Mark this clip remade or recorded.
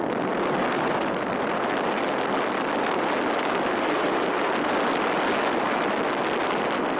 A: recorded